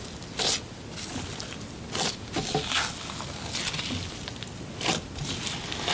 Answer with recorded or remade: recorded